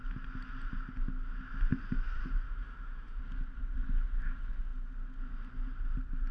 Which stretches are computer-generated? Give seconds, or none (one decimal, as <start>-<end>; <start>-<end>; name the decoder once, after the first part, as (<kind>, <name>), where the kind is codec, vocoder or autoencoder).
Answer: 1.7-3.2 (autoencoder, DAC-VAE)